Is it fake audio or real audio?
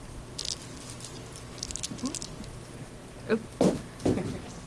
real